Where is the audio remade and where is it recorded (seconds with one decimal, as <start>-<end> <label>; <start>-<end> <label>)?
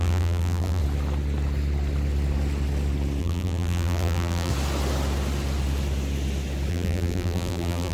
0.0-0.8 remade; 0.8-3.2 recorded; 3.2-4.5 remade; 4.5-6.7 recorded; 6.7-7.9 remade